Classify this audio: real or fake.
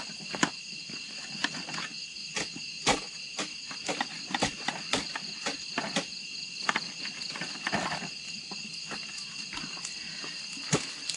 real